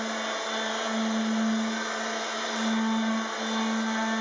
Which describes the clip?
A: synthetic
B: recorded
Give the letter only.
B